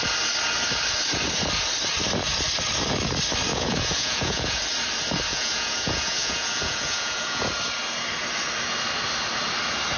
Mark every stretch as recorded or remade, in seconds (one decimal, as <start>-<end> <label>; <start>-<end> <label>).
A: 0.0-3.5 recorded; 3.5-4.6 remade; 4.6-5.3 recorded; 5.3-7.5 remade; 7.5-10.0 recorded